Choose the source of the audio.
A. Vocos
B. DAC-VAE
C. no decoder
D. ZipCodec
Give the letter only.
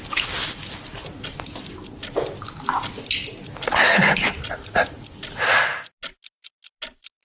C